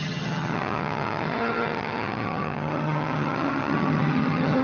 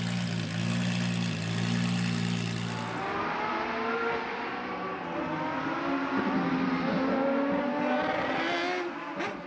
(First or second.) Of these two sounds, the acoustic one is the second